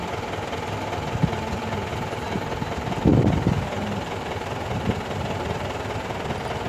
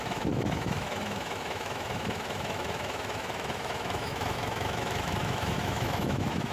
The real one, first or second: first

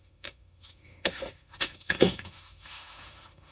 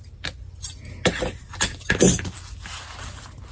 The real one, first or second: second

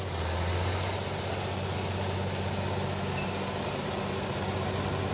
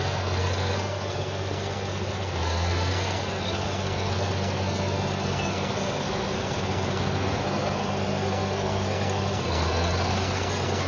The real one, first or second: first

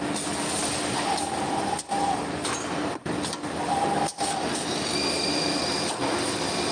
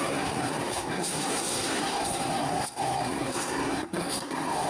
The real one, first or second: first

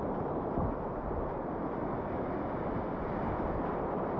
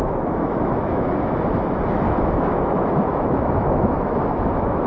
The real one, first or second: first